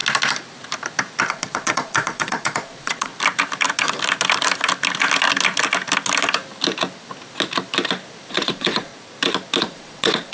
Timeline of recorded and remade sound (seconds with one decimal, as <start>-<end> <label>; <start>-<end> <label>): 0.0-1.3 recorded; 1.3-3.1 remade; 3.1-8.3 recorded; 8.3-8.9 remade; 8.9-9.6 recorded; 9.6-10.3 remade